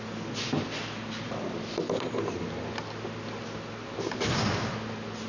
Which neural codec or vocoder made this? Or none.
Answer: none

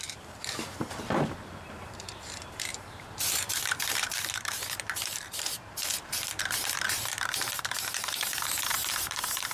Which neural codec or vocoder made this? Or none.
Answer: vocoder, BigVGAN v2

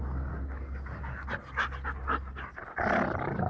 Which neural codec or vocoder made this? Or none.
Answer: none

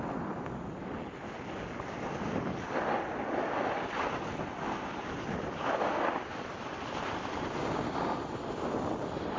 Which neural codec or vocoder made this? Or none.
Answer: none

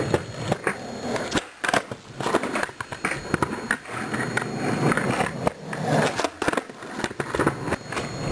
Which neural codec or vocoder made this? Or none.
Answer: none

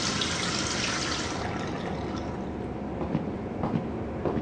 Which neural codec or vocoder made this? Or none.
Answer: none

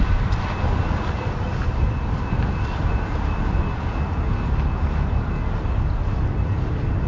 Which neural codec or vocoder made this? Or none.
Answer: none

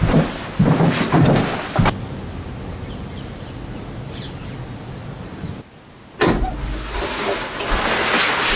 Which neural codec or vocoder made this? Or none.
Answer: none